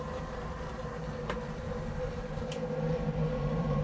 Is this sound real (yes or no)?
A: no